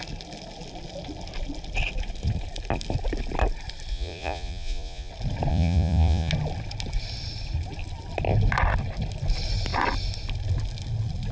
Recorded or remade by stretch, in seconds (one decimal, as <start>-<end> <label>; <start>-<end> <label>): 0.0-3.9 recorded; 3.9-5.1 remade; 5.1-5.5 recorded; 5.5-6.3 remade; 6.3-11.3 recorded